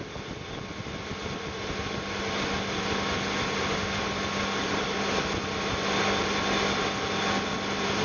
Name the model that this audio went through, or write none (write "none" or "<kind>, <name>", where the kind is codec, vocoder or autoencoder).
none